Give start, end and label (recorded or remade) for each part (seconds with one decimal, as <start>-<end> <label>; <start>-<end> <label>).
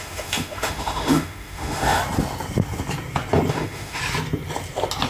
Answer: 0.0-2.0 remade; 2.0-3.5 recorded; 3.5-4.0 remade; 4.0-5.1 recorded